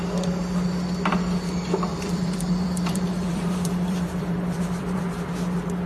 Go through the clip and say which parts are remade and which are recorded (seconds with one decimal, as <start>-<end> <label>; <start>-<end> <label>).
0.0-1.9 recorded; 1.9-5.0 remade; 5.0-5.9 recorded